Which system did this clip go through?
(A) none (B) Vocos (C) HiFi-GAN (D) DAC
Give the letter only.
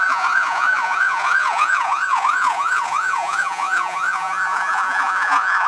B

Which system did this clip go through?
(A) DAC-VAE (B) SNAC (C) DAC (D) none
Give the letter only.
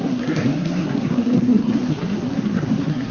B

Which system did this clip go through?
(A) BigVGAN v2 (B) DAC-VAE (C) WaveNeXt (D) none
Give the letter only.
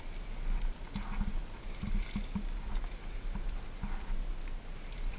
D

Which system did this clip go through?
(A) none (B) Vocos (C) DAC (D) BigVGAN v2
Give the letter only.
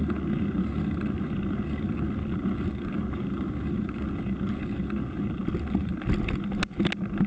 A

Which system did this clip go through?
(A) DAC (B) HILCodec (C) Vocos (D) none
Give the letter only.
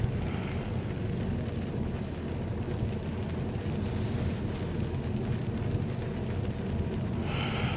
D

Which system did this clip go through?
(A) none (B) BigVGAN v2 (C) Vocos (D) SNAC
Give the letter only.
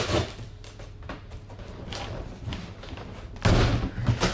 A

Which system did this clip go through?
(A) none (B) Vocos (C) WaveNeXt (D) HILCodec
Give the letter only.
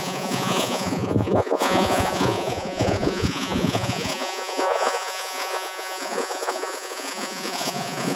B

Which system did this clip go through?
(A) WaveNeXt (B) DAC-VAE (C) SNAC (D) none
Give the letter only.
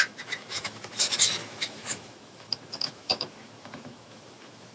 B